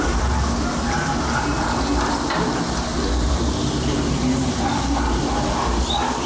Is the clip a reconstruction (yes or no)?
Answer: no